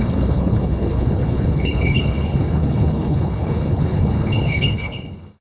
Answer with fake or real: fake